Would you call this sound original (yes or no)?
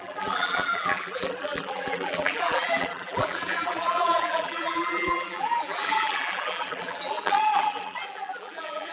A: no